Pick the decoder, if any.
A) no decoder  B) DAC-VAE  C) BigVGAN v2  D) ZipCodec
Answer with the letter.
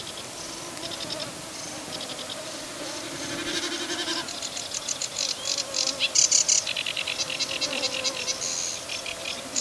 C